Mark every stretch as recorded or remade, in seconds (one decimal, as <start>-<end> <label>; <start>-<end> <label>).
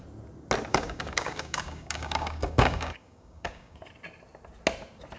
0.0-0.7 recorded; 0.7-3.8 remade; 3.8-5.2 recorded